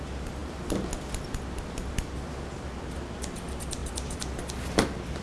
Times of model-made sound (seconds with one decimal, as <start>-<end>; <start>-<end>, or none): none

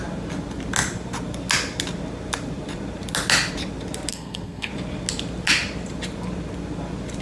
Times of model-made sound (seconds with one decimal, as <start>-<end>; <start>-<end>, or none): 4.1-4.7